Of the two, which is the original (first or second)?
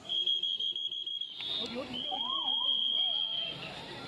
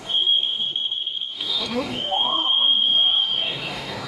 first